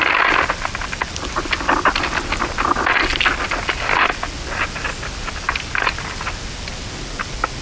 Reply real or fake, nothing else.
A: real